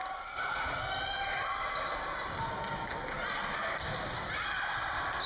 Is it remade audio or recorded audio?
recorded